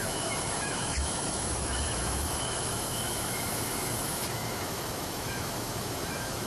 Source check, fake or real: fake